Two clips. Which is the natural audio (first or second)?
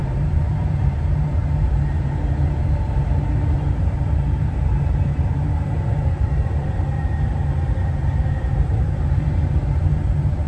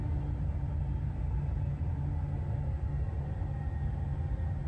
second